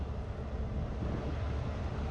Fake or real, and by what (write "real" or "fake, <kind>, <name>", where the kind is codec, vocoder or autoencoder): real